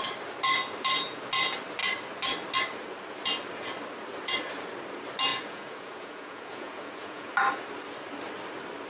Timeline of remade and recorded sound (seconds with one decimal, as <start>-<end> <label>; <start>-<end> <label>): 0.0-5.3 recorded; 5.3-7.3 remade; 7.3-8.9 recorded